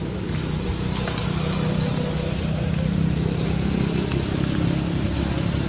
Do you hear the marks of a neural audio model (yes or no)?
no